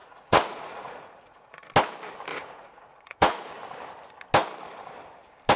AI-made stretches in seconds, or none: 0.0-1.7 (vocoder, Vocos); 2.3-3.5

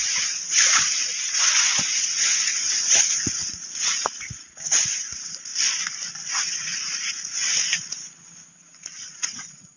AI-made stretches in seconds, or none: 0.0-5.5 (vocoder, Vocos); 6.3-7.4; 8.6-9.8

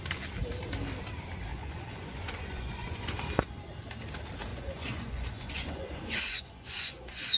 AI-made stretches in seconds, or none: 1.5-3.6 (vocoder, Vocos); 4.5-7.4

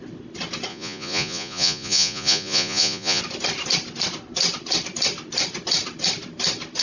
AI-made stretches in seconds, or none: 0.7-3.2 (vocoder, Vocos)

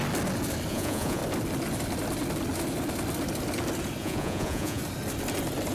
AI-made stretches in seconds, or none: 0.7-1.2 (vocoder, Vocos); 4.0-4.8